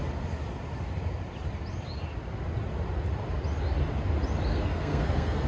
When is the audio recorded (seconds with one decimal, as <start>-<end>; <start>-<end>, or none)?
0.0-4.5